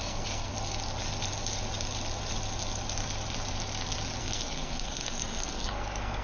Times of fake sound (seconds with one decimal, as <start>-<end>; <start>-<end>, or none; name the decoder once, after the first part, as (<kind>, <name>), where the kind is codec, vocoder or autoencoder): 0.0-0.5 (codec, SNAC); 4.2-6.2